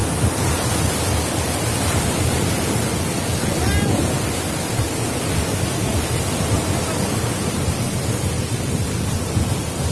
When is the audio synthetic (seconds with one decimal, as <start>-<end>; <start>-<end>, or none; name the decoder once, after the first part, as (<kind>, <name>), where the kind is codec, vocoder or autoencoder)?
none